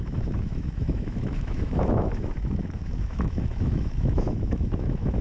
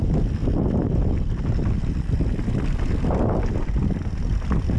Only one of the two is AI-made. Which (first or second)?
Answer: first